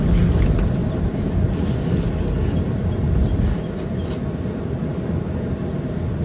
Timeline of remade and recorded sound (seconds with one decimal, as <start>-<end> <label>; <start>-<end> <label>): 0.0-0.8 recorded; 0.8-1.8 remade; 1.8-6.2 recorded